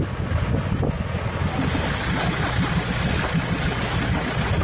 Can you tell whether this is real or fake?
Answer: real